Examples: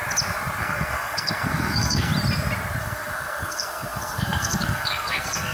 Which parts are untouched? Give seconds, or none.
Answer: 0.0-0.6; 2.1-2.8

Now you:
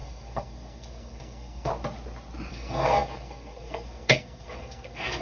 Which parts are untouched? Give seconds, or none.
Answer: 1.7-2.5